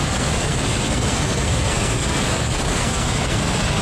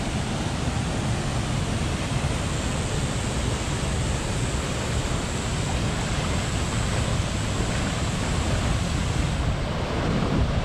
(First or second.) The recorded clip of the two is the second